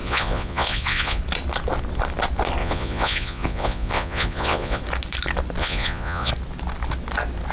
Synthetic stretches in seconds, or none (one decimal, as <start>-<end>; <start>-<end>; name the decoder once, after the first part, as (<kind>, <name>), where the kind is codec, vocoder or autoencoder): 0.0-1.2 (vocoder, Vocos); 2.6-4.8; 5.6-6.3